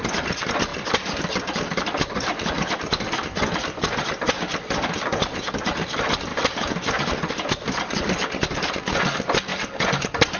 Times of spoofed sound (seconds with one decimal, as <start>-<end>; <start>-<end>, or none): none